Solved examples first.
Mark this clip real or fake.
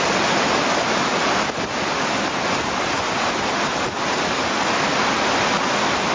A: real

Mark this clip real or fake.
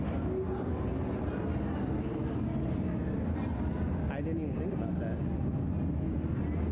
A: real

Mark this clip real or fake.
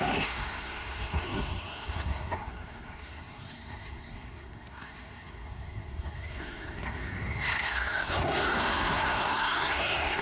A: fake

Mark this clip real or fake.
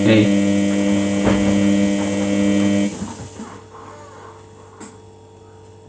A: real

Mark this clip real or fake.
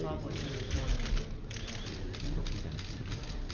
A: real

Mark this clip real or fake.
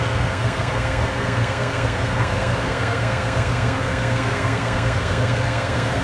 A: fake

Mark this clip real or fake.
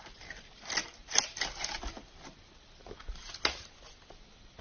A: real